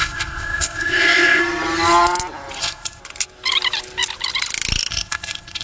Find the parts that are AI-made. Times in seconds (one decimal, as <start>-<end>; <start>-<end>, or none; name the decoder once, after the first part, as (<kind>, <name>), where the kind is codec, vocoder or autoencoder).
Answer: 0.0-1.4 (codec, ZipCodec); 2.6-3.0; 4.9-5.6

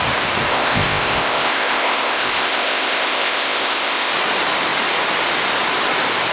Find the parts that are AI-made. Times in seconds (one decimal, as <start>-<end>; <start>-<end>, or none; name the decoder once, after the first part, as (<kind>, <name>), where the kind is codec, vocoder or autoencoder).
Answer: 0.5-4.1 (codec, ZipCodec)

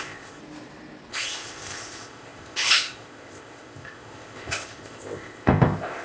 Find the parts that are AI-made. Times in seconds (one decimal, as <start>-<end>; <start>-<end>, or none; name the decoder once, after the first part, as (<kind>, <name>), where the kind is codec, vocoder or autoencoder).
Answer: 0.0-0.4 (codec, ZipCodec); 1.1-6.0

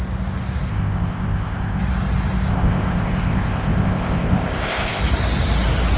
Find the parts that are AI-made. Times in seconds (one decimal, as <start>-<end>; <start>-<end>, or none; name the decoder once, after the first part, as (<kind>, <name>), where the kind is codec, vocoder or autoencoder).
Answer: 0.7-1.8 (codec, ZipCodec); 2.5-5.0

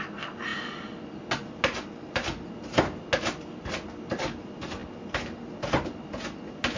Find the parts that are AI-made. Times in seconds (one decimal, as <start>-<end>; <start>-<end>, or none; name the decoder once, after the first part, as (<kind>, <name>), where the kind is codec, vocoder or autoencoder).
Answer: none

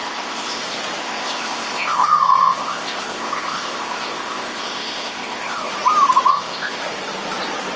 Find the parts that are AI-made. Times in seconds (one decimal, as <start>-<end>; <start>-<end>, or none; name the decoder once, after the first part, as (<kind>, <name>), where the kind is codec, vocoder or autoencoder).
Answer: 0.0-0.6 (codec, ZipCodec); 1.0-5.7; 6.3-6.8

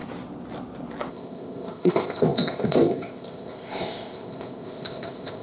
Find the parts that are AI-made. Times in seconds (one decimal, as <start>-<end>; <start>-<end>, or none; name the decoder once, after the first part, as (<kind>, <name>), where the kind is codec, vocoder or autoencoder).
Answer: 1.1-5.4 (codec, ZipCodec)

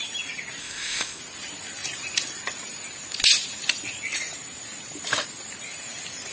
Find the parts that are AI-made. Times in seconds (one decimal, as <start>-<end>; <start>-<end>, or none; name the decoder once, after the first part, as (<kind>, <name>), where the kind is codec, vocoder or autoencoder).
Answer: 0.6-1.2 (codec, ZipCodec)